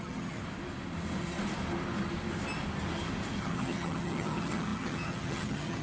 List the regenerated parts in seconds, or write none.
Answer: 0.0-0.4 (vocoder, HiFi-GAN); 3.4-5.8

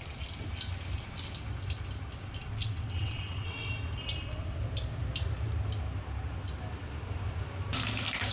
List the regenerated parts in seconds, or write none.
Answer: 2.6-3.7 (vocoder, WaveNeXt)

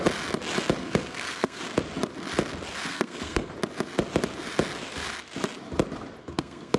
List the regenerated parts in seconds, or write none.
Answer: 0.8-1.6 (codec, SNAC); 2.9-3.5; 6.2-6.8

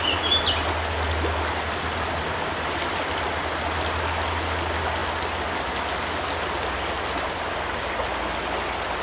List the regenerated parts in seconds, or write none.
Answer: none

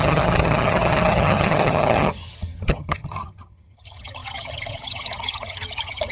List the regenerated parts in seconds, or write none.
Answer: 0.0-6.1 (vocoder, HiFi-GAN)

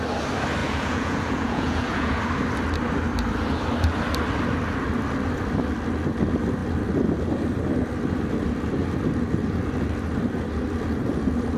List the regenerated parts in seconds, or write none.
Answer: 0.6-2.2 (vocoder, Vocos)